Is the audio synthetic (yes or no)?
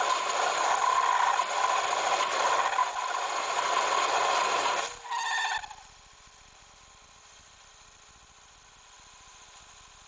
no